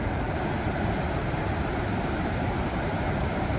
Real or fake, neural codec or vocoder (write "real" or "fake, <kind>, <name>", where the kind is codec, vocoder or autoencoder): real